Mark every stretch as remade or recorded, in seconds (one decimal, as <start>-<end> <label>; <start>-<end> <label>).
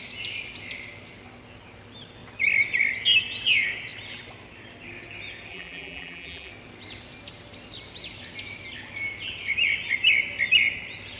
0.0-5.5 recorded; 5.5-6.5 remade; 6.5-11.2 recorded